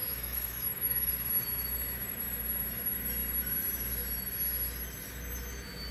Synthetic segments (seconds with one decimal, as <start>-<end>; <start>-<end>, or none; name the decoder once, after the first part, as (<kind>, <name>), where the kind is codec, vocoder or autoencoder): 0.0-1.1 (autoencoder, DAC-VAE)